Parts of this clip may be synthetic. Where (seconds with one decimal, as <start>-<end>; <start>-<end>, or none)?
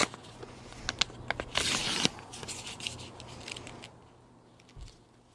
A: 0.0-0.8; 2.1-2.8